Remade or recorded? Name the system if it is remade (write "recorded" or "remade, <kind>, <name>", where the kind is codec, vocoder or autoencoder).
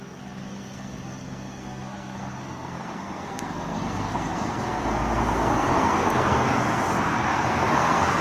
remade, codec, SNAC